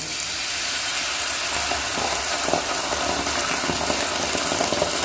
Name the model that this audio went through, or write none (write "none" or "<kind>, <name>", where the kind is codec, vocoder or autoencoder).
none